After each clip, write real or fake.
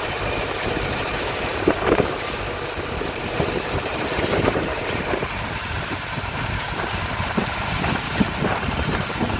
fake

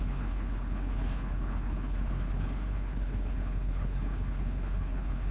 fake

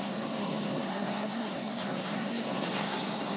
fake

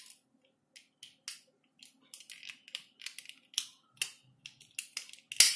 real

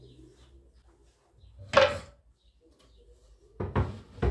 real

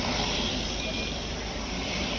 fake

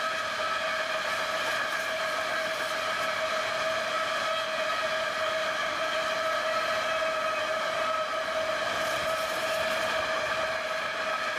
real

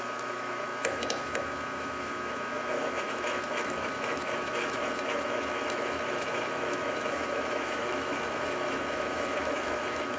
fake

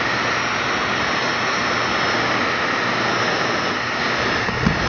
real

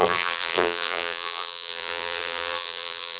fake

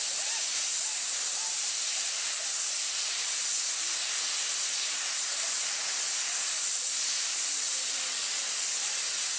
real